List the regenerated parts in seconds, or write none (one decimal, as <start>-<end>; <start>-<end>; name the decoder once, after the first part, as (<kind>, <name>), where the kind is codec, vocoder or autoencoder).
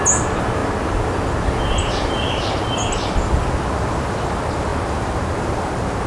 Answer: none